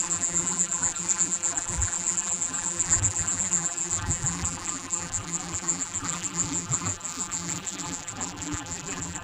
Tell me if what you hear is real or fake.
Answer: fake